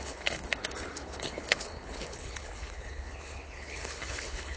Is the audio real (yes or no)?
no